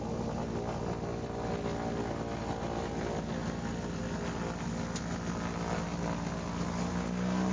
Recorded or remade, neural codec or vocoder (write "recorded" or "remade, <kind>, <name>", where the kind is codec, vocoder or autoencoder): recorded